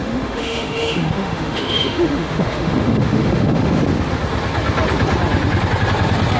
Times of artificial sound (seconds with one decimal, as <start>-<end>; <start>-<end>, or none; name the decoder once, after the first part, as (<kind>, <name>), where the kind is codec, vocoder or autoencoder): 0.0-3.8 (autoencoder, DAC-VAE)